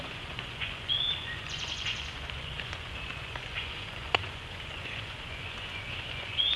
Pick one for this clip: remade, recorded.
remade